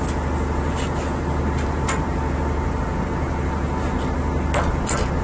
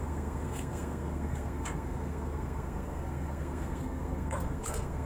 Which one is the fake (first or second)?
second